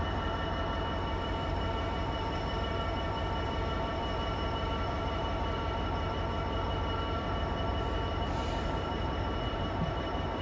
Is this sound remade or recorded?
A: remade